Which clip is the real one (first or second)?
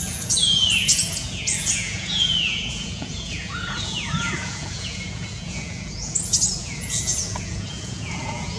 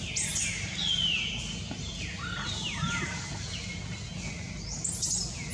second